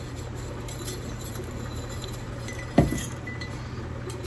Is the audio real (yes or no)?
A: no